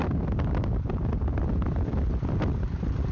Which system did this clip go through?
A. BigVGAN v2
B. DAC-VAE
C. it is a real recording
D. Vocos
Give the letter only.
A